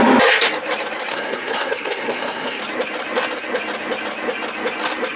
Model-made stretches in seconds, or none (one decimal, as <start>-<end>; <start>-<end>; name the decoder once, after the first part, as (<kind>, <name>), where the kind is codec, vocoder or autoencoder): 1.1-2.6 (codec, SNAC)